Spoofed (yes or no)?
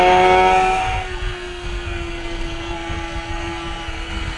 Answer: yes